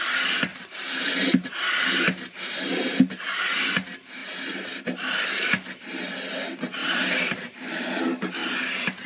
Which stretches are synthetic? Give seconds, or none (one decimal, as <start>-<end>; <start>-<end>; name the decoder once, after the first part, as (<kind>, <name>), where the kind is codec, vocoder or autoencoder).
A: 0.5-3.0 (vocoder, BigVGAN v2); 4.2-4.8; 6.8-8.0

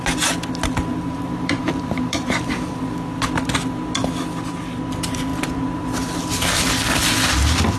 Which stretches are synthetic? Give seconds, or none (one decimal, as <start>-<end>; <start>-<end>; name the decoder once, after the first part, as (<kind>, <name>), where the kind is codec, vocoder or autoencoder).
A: 0.9-2.8 (vocoder, BigVGAN v2)

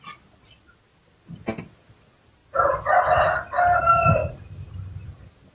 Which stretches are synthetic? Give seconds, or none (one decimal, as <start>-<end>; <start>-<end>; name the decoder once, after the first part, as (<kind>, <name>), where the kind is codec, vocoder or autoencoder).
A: 0.9-1.6 (vocoder, BigVGAN v2); 4.2-5.5

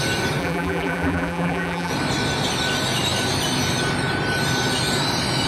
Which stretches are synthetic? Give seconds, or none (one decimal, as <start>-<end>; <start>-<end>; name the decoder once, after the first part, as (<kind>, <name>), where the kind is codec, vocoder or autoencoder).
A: 0.4-1.9 (vocoder, BigVGAN v2)